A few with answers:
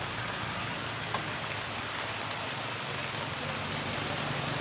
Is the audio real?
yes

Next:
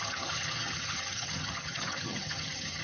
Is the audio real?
no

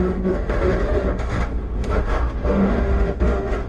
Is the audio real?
no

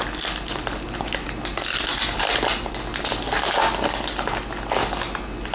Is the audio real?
yes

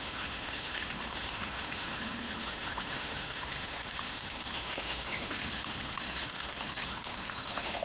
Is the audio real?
no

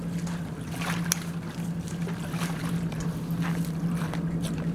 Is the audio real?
yes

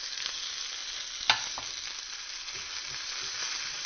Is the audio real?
yes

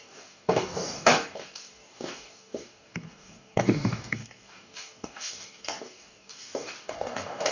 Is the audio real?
no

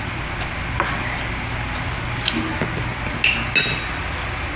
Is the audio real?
yes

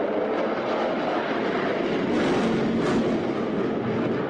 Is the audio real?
yes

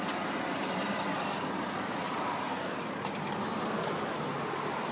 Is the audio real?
no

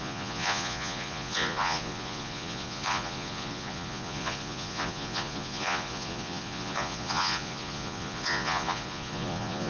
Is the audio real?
no